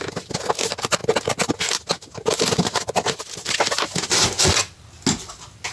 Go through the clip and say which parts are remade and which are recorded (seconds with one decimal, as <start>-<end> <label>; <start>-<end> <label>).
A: 0.0-5.7 recorded

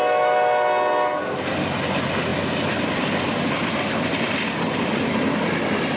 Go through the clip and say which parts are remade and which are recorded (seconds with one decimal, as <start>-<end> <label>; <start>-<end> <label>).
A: 0.0-6.0 recorded

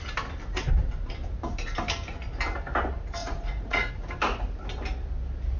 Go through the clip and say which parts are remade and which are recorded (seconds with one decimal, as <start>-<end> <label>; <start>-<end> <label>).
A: 0.0-3.2 recorded; 3.2-3.9 remade; 3.9-5.6 recorded

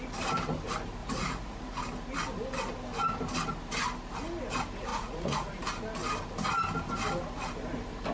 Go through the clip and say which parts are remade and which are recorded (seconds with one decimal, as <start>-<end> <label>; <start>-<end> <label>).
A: 0.0-1.0 recorded; 1.0-1.8 remade; 1.8-4.9 recorded; 4.9-5.5 remade; 5.5-8.1 recorded

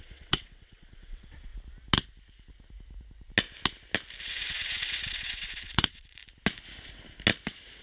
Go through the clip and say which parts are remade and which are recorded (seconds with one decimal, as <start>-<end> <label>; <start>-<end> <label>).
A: 0.0-1.5 remade; 1.5-4.2 recorded; 4.2-6.2 remade; 6.2-7.8 recorded

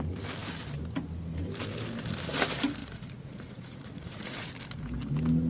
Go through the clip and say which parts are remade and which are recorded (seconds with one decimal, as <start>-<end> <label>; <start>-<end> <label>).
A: 0.0-2.8 recorded; 2.8-4.5 remade; 4.5-5.5 recorded

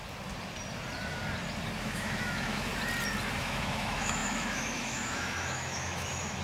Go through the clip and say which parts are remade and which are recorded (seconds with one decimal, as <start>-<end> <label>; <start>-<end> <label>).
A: 0.0-1.8 recorded; 1.8-2.7 remade; 2.7-3.4 recorded; 3.4-6.4 remade

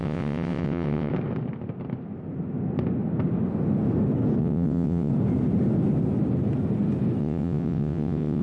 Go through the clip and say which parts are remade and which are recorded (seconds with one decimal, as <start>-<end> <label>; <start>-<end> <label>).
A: 0.0-1.1 remade; 1.1-4.4 recorded; 4.4-5.1 remade; 5.1-7.2 recorded; 7.2-8.4 remade